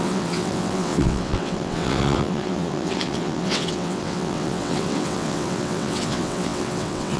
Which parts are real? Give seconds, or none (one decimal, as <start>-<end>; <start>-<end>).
none